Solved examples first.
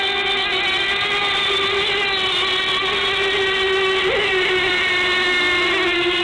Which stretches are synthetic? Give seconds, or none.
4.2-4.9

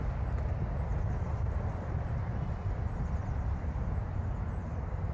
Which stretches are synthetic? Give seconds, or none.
0.9-4.0

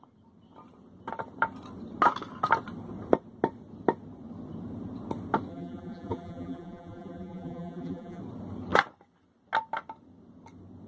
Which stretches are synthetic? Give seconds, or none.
5.5-8.2